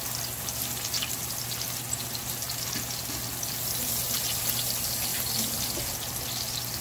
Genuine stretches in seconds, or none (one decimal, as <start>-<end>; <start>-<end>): 0.0-6.8